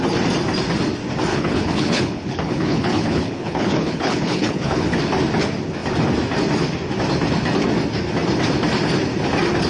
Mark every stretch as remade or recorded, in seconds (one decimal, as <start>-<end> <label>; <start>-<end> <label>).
0.0-1.3 recorded; 1.3-5.0 remade; 5.0-9.7 recorded